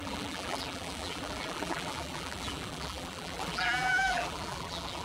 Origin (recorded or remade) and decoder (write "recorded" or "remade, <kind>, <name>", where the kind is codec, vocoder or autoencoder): remade, vocoder, BigVGAN v2